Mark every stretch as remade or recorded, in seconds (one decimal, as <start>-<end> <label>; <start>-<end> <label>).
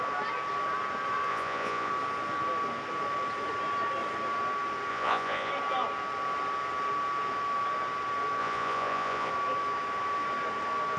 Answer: 0.0-1.3 recorded; 1.3-1.9 remade; 1.9-4.9 recorded; 4.9-5.5 remade; 5.5-8.4 recorded; 8.4-9.3 remade; 9.3-11.0 recorded